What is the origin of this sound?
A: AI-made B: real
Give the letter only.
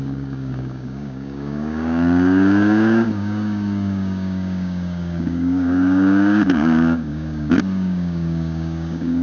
A